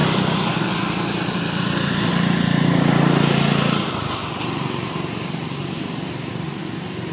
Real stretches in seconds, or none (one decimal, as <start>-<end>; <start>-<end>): 0.0-7.1